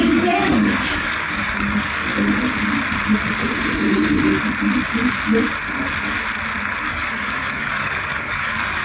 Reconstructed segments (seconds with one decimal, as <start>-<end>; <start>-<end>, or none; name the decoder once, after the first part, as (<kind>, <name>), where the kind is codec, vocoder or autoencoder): 0.0-2.1 (codec, DAC); 6.8-8.8